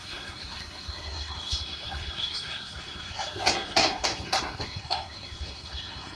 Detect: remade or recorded remade